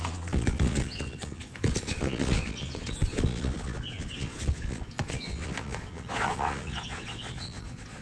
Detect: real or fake fake